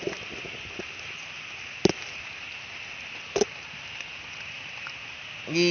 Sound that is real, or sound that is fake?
real